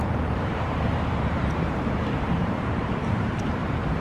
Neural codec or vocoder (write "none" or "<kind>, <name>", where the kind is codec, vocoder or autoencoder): vocoder, BigVGAN v2